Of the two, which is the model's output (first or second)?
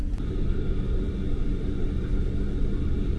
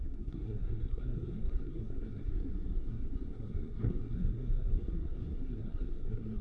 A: second